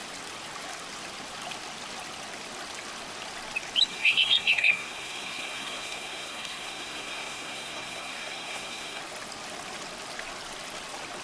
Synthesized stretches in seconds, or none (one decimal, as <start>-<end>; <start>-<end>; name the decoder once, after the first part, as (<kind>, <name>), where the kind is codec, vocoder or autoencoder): 3.9-9.0 (codec, SNAC)